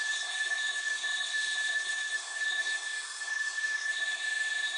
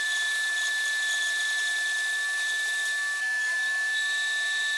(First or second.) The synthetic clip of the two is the first